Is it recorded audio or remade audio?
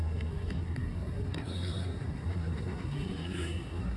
remade